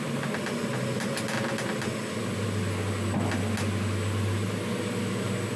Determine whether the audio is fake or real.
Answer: real